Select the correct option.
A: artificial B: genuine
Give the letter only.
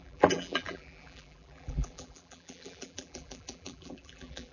A